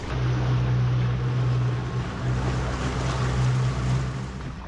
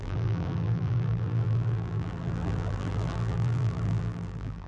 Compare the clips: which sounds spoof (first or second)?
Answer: second